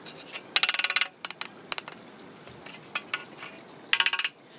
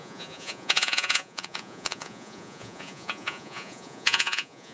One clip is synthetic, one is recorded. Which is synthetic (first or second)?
second